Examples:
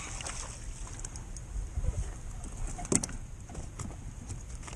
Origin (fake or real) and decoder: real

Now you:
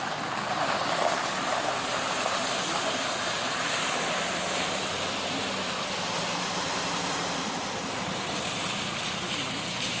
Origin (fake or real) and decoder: fake, vocoder, BigVGAN v2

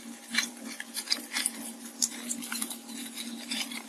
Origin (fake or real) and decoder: fake, vocoder, BigVGAN v2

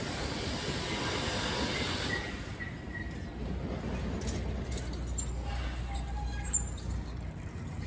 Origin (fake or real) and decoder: real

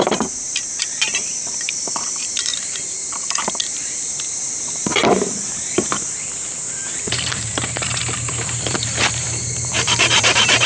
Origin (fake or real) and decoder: fake, vocoder, BigVGAN v2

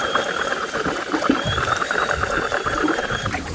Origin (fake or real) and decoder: fake, vocoder, BigVGAN v2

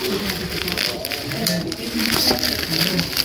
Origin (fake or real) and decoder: fake, vocoder, BigVGAN v2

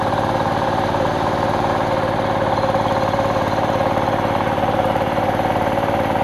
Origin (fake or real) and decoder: fake, vocoder, BigVGAN v2